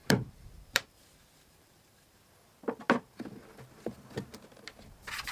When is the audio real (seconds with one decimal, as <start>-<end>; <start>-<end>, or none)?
2.3-5.3